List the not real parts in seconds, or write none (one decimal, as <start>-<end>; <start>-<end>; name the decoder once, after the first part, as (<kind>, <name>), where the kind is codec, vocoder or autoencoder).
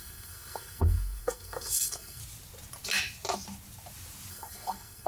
0.0-2.2 (codec, SNAC); 4.3-5.1